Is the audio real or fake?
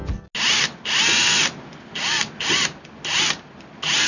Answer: real